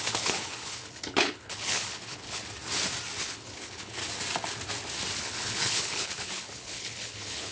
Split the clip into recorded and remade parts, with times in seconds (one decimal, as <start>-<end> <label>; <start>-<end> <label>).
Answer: 0.0-2.4 remade; 2.4-3.2 recorded; 3.2-4.0 remade; 4.0-5.2 recorded; 5.2-7.5 remade